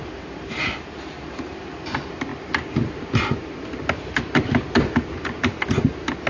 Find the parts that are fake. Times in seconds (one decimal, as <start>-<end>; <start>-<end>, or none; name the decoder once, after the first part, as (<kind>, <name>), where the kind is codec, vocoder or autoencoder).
none

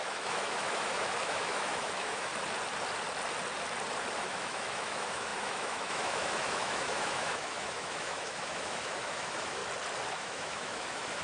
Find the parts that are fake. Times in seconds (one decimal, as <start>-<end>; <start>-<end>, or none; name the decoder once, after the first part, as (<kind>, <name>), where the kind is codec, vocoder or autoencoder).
0.0-2.3 (autoencoder, DAC-VAE); 4.2-9.6; 10.1-11.2

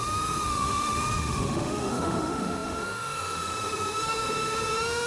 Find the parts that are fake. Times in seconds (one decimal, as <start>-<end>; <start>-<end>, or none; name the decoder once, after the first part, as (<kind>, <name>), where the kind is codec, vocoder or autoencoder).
0.0-5.1 (autoencoder, DAC-VAE)